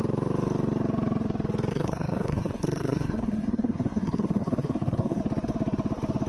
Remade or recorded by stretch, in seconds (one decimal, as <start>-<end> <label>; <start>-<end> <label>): 0.0-1.7 recorded; 1.7-5.2 remade; 5.2-6.3 recorded